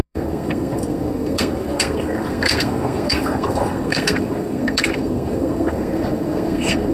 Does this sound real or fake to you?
fake